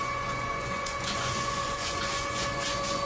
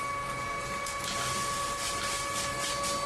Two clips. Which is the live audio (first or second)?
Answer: second